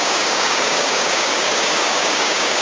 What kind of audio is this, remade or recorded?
remade